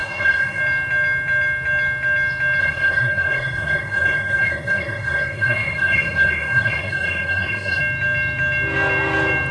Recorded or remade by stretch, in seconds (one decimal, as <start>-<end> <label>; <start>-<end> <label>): 0.0-0.6 remade; 0.6-2.6 recorded; 2.6-7.8 remade; 7.8-9.5 recorded